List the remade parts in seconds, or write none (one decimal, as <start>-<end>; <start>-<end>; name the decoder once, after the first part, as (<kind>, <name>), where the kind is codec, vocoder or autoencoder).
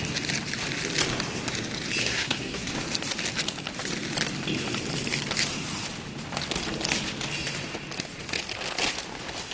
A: 2.0-2.7 (codec, SNAC)